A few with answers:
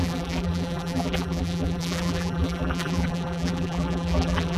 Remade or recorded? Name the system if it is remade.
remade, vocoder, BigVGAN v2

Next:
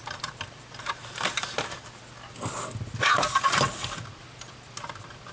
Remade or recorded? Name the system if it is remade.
recorded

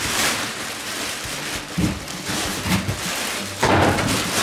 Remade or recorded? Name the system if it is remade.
remade, vocoder, BigVGAN v2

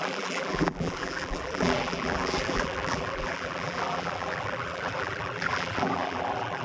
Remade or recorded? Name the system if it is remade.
remade, vocoder, BigVGAN v2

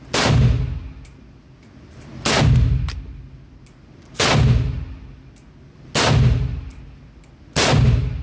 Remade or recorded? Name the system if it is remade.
recorded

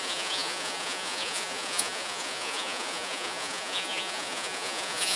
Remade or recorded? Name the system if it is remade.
remade, vocoder, Vocos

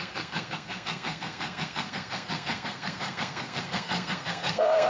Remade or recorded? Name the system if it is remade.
remade, codec, SNAC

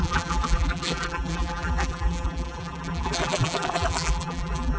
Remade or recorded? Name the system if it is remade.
remade, vocoder, BigVGAN v2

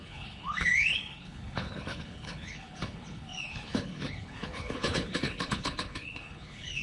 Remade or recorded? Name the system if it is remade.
remade, codec, HILCodec